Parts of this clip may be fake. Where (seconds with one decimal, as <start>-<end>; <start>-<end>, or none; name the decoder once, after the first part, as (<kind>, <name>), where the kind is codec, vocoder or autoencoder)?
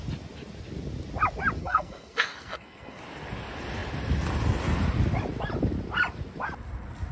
1.6-3.0 (codec, SNAC)